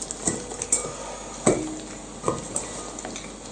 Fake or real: real